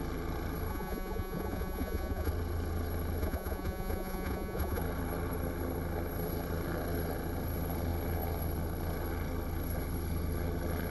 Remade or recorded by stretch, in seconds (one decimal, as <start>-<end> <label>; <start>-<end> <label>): 0.0-0.7 recorded; 0.7-2.3 remade; 2.3-3.2 recorded; 3.2-4.8 remade; 4.8-10.9 recorded

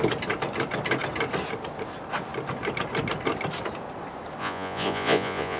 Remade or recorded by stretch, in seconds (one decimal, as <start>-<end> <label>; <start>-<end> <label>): 0.0-4.4 recorded; 4.4-5.6 remade